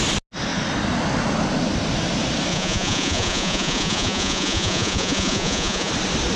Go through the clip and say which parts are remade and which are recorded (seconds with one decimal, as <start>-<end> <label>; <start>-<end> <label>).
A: 0.0-2.5 recorded; 2.5-5.9 remade; 5.9-6.4 recorded